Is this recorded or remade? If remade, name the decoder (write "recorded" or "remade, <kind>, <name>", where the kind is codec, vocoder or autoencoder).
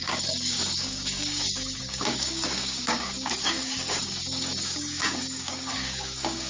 remade, codec, DAC